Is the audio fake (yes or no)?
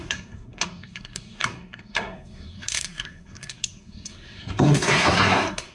yes